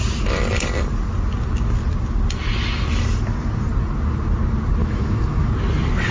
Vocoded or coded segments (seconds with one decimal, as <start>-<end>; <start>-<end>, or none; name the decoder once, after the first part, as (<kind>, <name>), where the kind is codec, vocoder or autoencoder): 4.8-5.5 (autoencoder, DAC-VAE)